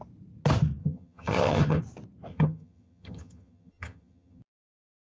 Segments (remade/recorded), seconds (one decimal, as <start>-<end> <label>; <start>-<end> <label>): 0.0-0.8 recorded; 0.8-1.8 remade; 1.8-2.3 recorded; 2.3-4.4 remade; 4.4-5.1 recorded